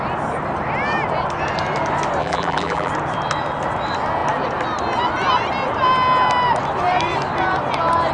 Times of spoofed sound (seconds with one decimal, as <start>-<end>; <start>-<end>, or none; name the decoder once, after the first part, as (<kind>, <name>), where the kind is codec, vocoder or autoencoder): 2.2-2.9 (vocoder, BigVGAN v2)